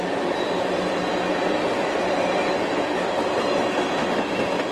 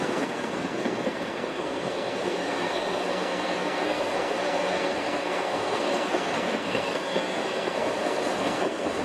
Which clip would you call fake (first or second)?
second